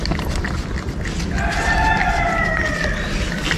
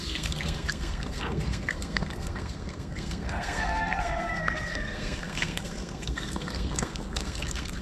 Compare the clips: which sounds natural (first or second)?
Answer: first